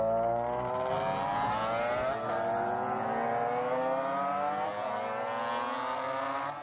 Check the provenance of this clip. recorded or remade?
recorded